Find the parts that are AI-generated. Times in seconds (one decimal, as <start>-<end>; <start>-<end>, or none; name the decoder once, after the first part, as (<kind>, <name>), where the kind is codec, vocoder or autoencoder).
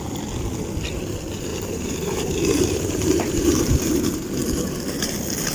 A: 1.5-4.0 (vocoder, BigVGAN v2)